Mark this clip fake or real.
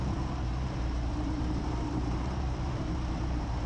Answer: fake